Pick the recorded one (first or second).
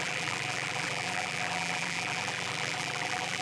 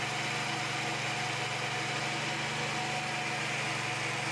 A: second